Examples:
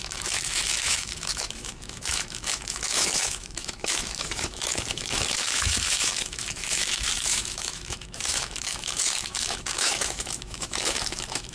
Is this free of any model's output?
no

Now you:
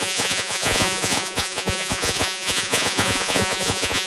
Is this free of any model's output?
no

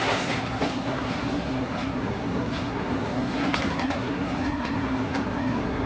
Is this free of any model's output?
no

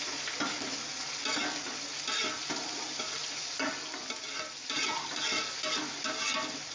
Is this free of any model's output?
yes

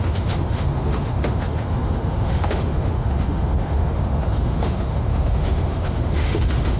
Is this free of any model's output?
no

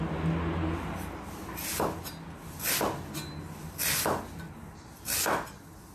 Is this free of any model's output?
yes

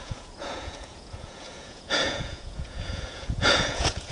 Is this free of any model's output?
no